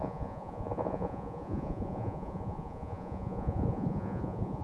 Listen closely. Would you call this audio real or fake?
fake